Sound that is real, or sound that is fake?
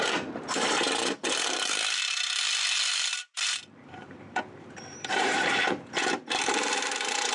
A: fake